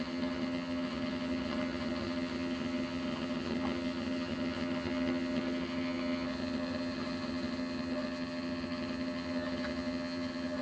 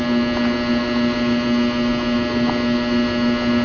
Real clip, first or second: second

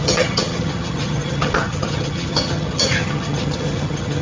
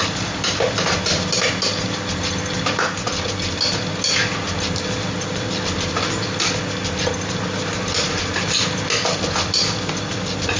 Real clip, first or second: second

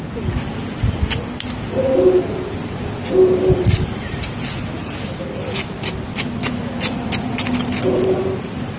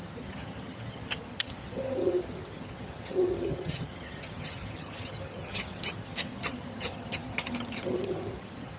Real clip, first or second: first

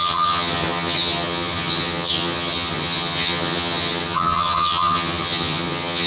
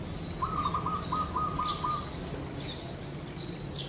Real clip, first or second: second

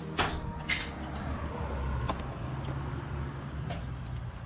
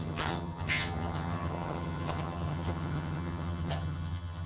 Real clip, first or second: first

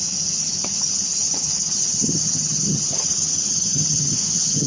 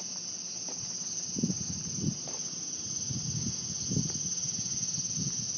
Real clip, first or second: second